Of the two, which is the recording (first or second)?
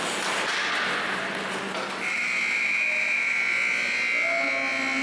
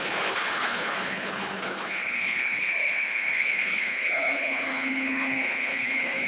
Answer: first